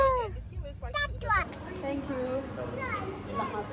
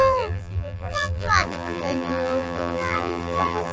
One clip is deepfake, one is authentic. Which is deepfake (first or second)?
second